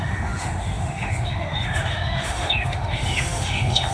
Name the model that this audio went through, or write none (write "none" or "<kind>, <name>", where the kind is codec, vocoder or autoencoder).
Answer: autoencoder, DAC-VAE